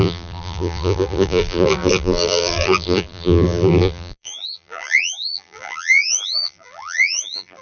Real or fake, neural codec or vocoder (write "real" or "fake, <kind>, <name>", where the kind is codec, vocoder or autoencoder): fake, vocoder, BigVGAN v2